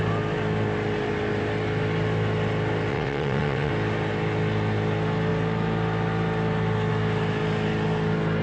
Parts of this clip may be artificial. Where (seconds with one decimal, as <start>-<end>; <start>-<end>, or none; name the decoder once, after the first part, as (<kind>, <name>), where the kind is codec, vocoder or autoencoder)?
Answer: 2.9-3.7 (vocoder, WaveNeXt)